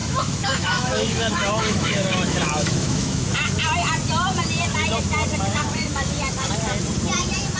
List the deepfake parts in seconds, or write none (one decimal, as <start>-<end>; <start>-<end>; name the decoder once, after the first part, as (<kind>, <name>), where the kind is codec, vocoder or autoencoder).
0.0-3.2 (autoencoder, DAC-VAE); 5.5-6.2